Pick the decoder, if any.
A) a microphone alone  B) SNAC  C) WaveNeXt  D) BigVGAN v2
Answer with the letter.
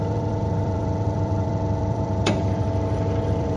D